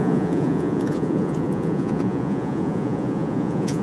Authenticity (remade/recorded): remade